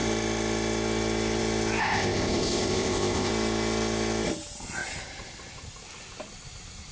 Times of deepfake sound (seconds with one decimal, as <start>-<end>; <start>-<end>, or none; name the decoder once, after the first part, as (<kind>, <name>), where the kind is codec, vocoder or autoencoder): 1.8-3.3 (codec, ZipCodec)